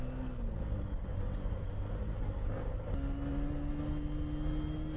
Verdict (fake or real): real